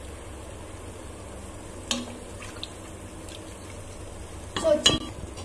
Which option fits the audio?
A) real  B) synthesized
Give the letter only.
A